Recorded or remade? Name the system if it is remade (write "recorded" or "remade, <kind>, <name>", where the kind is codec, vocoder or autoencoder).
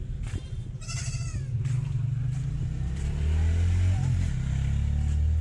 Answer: recorded